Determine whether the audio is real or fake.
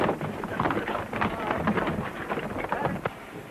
real